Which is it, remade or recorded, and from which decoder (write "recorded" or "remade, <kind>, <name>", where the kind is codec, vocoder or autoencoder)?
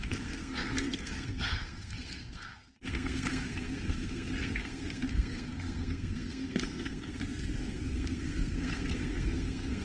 remade, codec, SNAC